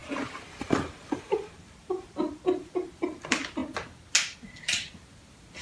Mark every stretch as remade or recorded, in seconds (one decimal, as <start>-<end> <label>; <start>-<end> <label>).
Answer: 0.0-3.6 remade; 3.6-4.6 recorded; 4.6-5.6 remade